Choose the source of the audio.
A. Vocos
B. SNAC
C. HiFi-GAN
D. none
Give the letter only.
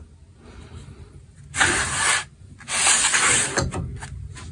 D